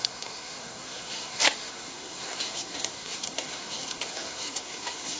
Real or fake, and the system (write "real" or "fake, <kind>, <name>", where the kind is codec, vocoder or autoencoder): fake, codec, SNAC